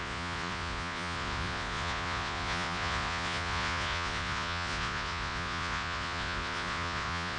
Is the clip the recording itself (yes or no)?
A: no